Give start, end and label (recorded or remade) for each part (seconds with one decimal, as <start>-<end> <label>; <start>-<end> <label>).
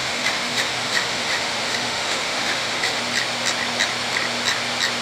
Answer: 0.0-3.0 remade; 3.0-5.0 recorded